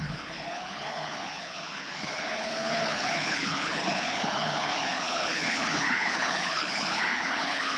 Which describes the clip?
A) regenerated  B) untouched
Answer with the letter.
A